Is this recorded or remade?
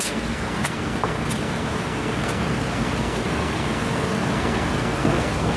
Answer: remade